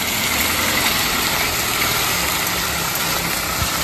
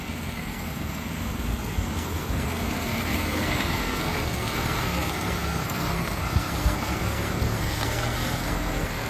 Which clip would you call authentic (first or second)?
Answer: first